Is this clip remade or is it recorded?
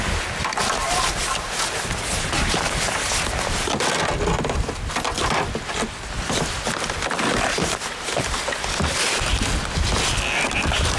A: recorded